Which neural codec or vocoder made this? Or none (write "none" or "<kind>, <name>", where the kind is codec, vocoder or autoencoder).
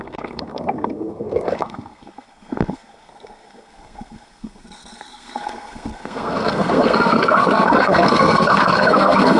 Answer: codec, SNAC